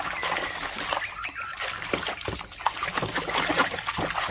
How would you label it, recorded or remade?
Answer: recorded